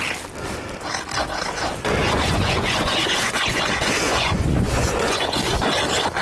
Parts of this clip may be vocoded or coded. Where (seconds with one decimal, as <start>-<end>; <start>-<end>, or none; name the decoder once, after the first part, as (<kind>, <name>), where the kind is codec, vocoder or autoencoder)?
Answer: 2.0-5.7 (vocoder, Vocos)